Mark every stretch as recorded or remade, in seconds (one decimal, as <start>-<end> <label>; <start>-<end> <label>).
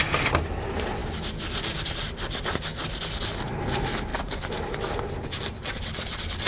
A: 0.0-6.5 recorded